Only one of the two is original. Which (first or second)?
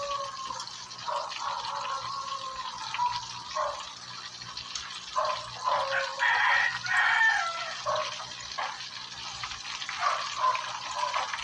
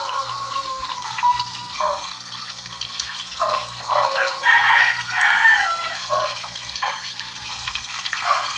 first